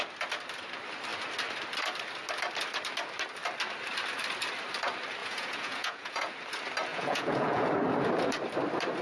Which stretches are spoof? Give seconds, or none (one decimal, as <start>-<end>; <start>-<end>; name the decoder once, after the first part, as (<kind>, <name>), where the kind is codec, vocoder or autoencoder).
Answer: 5.2-6.3 (vocoder, Vocos); 6.9-7.7